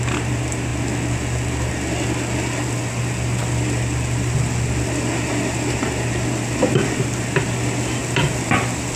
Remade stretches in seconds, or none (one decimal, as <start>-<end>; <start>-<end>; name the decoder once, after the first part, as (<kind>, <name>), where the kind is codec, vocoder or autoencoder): none